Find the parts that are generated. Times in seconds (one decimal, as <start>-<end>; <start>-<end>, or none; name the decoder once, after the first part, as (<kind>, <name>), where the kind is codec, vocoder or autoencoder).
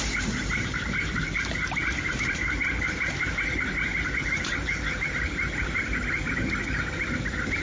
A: none